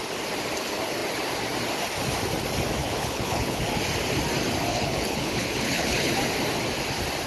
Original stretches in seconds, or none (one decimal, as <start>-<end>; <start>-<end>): 0.0-2.8; 3.6-4.7; 6.1-7.3